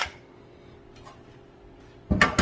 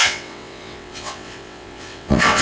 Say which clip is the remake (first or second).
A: second